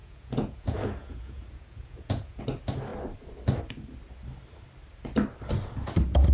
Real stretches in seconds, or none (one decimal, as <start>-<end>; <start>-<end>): 2.4-6.3